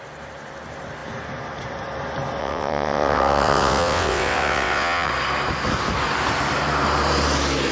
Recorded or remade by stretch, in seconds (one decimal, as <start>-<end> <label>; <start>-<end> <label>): 0.0-2.4 recorded; 2.4-5.1 remade; 5.1-7.7 recorded